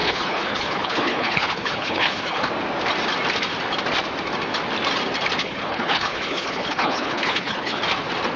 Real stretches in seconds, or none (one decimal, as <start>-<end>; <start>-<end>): 2.5-5.4; 7.8-8.4